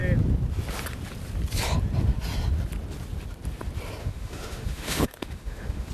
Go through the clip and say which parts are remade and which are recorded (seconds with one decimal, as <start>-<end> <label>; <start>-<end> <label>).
0.0-4.0 recorded; 4.0-5.9 remade